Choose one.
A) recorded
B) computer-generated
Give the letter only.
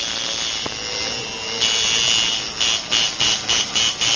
A